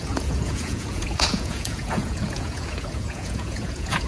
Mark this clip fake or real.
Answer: fake